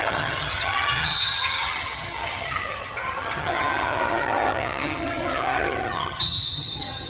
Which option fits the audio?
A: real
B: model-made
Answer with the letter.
B